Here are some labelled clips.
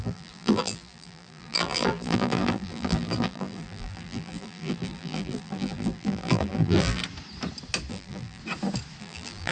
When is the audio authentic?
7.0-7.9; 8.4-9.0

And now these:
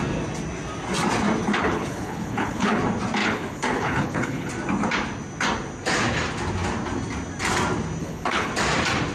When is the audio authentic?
0.0-1.6; 2.8-3.2; 4.5-8.0; 8.5-9.1

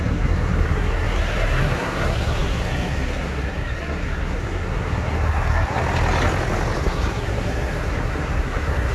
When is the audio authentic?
5.8-6.8

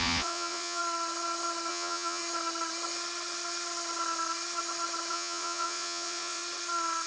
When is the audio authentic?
0.8-1.7; 2.2-5.1; 6.4-7.1

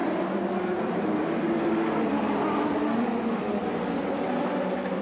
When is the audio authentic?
0.0-5.0

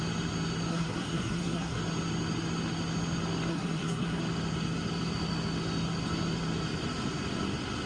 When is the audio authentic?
0.0-0.7; 1.8-3.5; 4.2-7.9